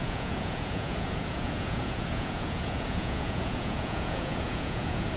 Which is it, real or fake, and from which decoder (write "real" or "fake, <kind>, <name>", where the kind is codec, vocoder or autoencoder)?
fake, vocoder, Vocos